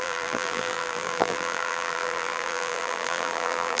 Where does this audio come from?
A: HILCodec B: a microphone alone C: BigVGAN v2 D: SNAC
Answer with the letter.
C